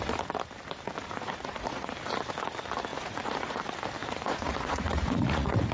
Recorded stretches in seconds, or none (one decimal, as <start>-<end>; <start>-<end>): 0.0-1.0; 1.9-2.9; 3.6-4.0